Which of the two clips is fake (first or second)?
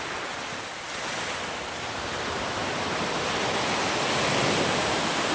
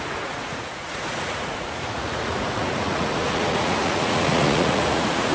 second